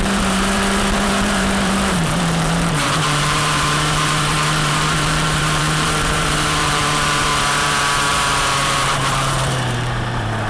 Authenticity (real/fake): fake